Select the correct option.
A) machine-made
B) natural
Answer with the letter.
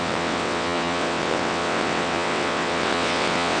A